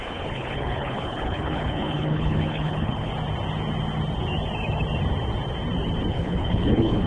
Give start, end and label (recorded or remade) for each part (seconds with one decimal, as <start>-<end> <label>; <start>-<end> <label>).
0.0-3.1 remade; 3.1-6.1 recorded; 6.1-7.1 remade